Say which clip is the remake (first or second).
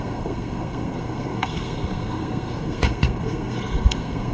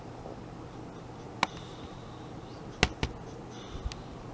first